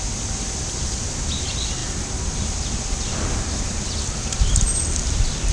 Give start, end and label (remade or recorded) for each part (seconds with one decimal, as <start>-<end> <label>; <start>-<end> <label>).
0.0-5.5 recorded